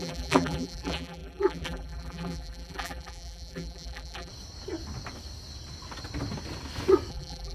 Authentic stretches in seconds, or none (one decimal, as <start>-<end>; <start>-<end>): 4.3-7.1

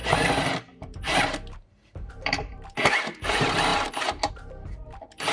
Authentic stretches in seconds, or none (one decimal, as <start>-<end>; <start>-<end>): 3.7-4.3

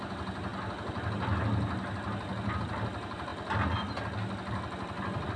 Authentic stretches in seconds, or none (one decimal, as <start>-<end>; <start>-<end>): 0.5-2.6; 3.3-5.4

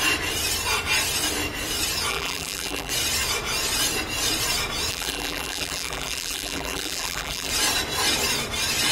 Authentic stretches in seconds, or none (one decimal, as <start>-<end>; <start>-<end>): 0.0-2.1; 2.9-4.9; 7.5-8.9

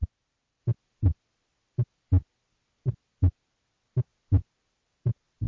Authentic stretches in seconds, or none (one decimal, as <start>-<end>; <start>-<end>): 0.6-4.1; 4.7-5.5

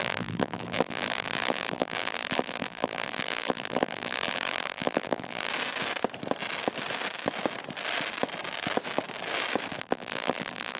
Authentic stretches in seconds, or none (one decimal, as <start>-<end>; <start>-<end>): 5.5-9.8

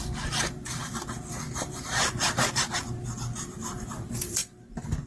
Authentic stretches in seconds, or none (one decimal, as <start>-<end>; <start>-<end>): none